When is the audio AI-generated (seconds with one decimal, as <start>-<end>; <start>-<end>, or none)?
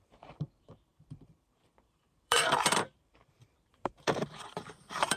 0.0-5.2